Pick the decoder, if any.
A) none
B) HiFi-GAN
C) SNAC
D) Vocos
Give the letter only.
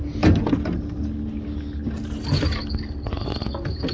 A